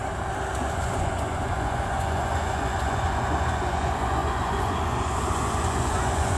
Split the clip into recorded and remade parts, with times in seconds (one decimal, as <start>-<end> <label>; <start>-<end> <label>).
0.0-0.6 recorded; 0.6-6.4 remade